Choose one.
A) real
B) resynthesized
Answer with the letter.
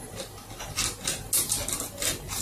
A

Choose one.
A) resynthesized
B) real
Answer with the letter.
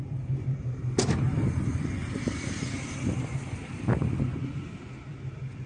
A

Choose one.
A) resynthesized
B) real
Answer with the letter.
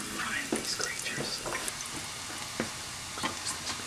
B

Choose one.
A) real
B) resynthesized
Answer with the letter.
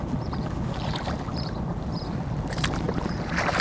B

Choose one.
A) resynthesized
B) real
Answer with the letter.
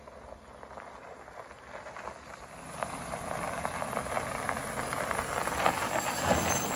B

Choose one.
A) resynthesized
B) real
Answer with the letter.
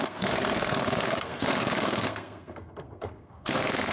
A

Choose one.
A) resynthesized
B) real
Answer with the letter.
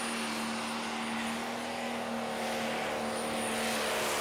B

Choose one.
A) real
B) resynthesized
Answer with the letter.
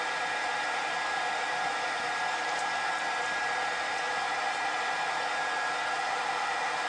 A